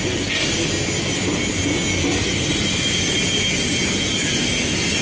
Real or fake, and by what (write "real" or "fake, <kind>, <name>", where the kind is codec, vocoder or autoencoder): real